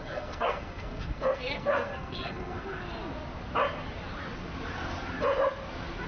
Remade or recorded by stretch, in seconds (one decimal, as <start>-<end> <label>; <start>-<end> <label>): 0.0-2.8 remade; 2.8-6.1 recorded